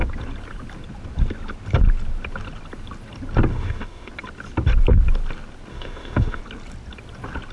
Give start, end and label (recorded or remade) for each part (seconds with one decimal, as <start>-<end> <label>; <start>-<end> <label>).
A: 0.0-3.5 recorded; 3.5-4.1 remade; 4.1-5.7 recorded; 5.7-6.4 remade; 6.4-7.5 recorded